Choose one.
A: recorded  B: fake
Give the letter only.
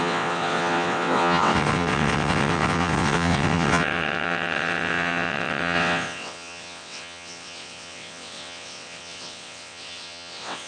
B